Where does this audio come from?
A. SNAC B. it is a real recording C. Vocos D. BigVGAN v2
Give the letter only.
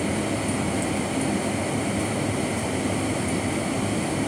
B